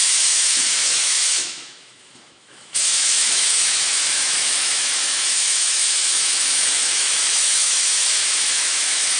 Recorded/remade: remade